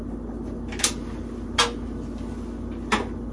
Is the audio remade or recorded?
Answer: recorded